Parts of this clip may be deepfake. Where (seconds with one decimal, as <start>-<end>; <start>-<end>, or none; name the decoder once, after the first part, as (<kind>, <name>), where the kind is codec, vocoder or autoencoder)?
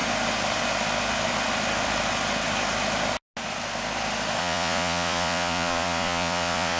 4.4-6.8 (vocoder, Vocos)